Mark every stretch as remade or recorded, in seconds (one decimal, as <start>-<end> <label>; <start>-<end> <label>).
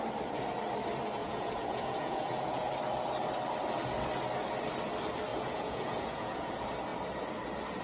0.0-1.2 recorded; 1.2-2.7 remade; 2.7-5.3 recorded; 5.3-6.5 remade; 6.5-7.8 recorded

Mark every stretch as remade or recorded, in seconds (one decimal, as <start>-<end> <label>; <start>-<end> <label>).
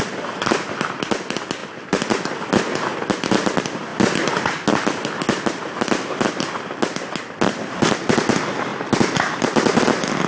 0.0-10.3 recorded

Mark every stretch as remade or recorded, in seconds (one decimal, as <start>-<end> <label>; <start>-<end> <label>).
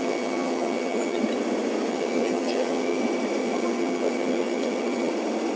0.0-1.2 remade; 1.2-1.9 recorded; 1.9-3.0 remade; 3.0-3.4 recorded; 3.4-5.1 remade; 5.1-5.6 recorded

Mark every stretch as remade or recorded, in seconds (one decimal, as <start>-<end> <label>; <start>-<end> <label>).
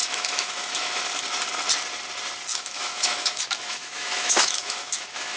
0.0-1.0 remade; 1.0-2.5 recorded; 2.5-5.4 remade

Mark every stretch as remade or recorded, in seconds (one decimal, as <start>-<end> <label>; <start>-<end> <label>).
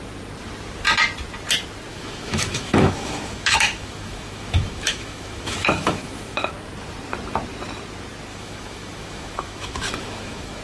0.0-1.9 recorded; 1.9-6.5 remade; 6.5-8.3 recorded; 8.3-10.6 remade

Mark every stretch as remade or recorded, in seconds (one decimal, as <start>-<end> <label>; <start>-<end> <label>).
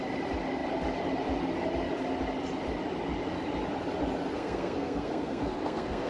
0.0-4.3 recorded; 4.3-6.1 remade